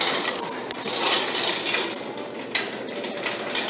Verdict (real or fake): real